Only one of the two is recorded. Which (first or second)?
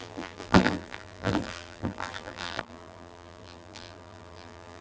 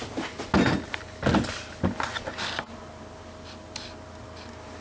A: second